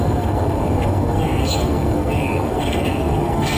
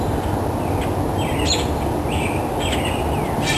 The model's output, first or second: first